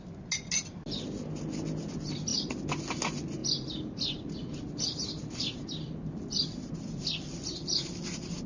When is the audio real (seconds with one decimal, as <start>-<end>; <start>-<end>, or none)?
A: 0.0-8.5